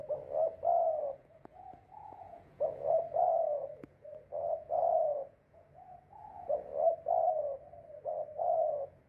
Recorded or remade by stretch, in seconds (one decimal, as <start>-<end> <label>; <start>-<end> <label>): 0.0-1.0 recorded; 1.0-6.7 remade; 6.7-8.4 recorded; 8.4-9.1 remade